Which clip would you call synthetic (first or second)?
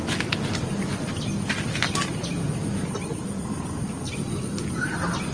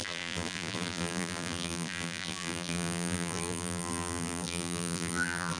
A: second